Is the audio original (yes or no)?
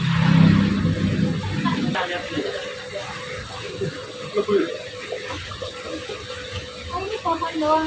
yes